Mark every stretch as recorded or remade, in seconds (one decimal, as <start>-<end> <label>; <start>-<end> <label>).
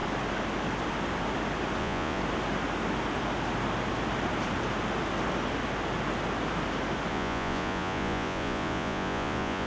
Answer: 0.0-1.8 recorded; 1.8-2.2 remade; 2.2-7.1 recorded; 7.1-9.7 remade